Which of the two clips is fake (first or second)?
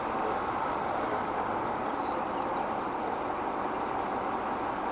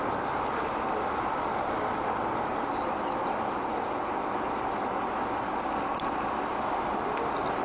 first